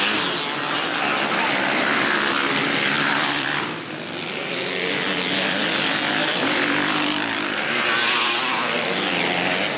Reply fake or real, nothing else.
real